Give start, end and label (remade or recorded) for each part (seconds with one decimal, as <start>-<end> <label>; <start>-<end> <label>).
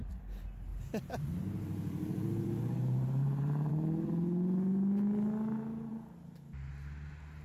0.0-0.7 recorded; 0.7-3.7 remade; 3.7-5.9 recorded; 5.9-6.7 remade; 6.7-7.4 recorded